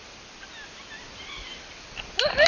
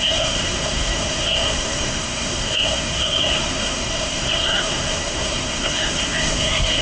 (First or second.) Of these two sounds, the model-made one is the second